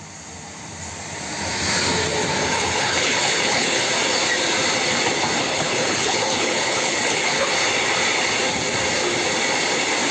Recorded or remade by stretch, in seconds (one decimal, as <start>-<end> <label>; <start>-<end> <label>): 0.0-2.4 recorded; 2.4-3.9 remade; 3.9-5.5 recorded; 5.5-7.5 remade; 7.5-10.1 recorded